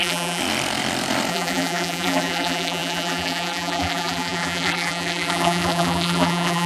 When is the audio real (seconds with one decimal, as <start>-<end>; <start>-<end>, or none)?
0.4-1.3